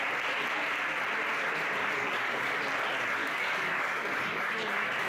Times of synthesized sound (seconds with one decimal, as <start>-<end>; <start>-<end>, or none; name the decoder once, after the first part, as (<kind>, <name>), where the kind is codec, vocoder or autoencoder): 1.8-2.6 (codec, DAC); 3.2-5.1